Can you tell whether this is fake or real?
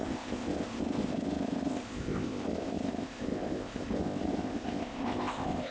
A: fake